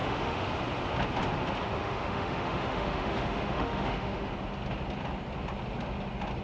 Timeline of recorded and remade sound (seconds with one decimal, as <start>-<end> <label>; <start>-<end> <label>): 0.0-0.5 remade; 0.5-1.8 recorded; 1.8-4.3 remade; 4.3-6.4 recorded